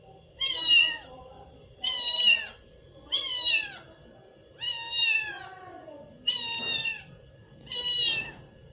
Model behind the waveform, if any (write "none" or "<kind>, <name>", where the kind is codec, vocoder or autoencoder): none